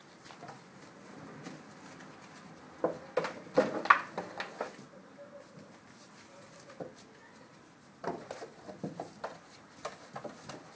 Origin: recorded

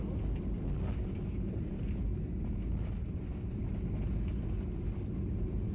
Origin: recorded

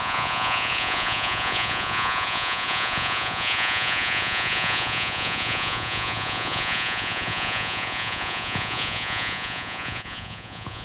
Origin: remade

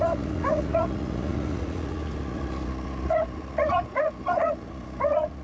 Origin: remade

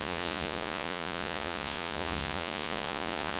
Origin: remade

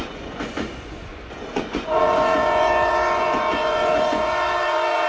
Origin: remade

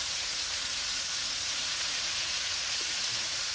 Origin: remade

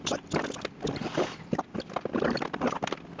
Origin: recorded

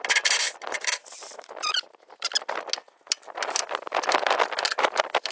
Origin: recorded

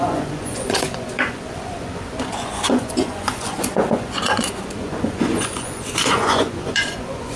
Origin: remade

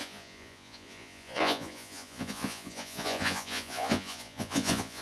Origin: remade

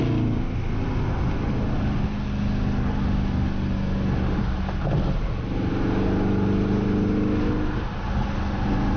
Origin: recorded